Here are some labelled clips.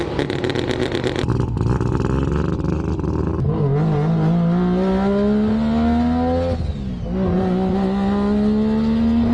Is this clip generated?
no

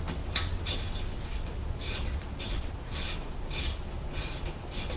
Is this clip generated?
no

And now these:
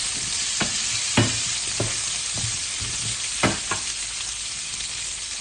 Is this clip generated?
no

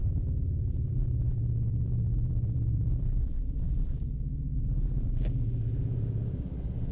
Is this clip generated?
yes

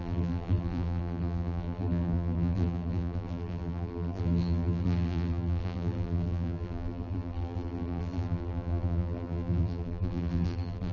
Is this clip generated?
yes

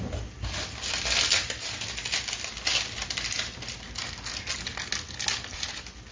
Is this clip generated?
no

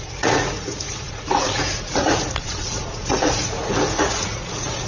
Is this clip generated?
yes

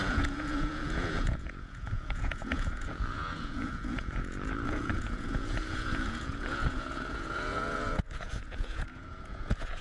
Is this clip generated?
yes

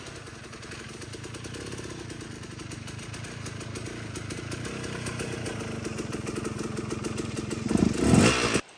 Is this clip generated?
no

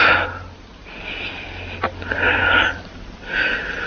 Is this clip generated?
no